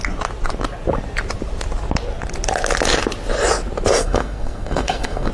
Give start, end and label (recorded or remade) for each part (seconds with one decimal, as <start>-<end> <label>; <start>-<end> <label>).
0.0-4.0 recorded; 4.0-5.3 remade